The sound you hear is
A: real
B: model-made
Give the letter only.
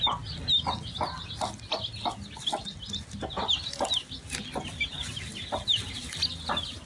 A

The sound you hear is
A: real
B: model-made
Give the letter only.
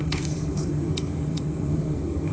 B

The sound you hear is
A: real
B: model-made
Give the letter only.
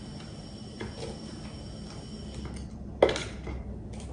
A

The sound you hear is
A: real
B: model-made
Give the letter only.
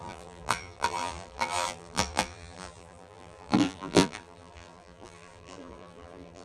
B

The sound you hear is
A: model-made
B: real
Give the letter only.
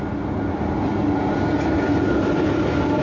B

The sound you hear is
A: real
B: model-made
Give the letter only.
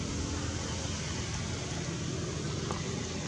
A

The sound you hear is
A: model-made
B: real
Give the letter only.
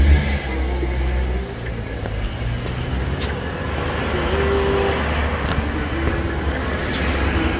B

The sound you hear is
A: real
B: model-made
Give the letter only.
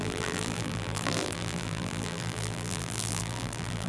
B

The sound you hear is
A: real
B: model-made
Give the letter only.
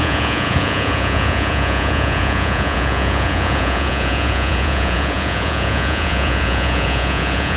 B